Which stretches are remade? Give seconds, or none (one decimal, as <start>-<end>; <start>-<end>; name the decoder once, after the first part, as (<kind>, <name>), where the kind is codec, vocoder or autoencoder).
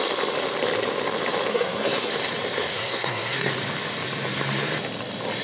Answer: 1.5-2.1 (codec, SNAC); 2.7-3.5